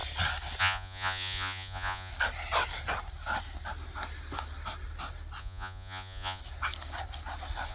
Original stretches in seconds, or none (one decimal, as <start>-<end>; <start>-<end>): 0.0-0.6; 2.1-5.4; 6.4-7.7